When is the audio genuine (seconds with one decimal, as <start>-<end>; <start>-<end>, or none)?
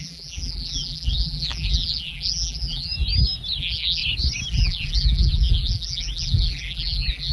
2.9-3.6; 4.0-4.5